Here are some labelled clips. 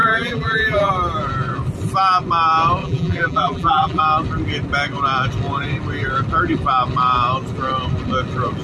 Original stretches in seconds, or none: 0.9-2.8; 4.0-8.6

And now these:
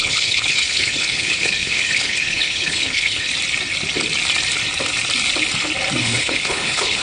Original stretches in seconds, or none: 3.3-6.0

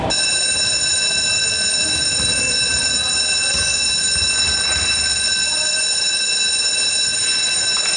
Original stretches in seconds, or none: 0.0-8.0

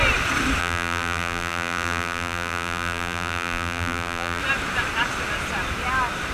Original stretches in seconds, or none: 0.0-0.6; 4.4-6.3

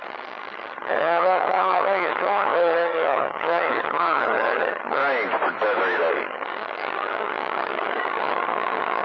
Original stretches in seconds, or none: 5.0-6.1

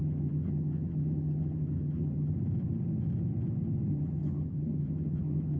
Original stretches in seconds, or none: 2.3-3.9

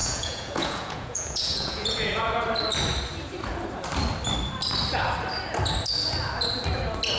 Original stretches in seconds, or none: 2.4-7.2